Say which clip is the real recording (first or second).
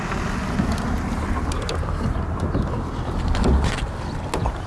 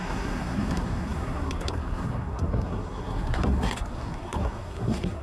first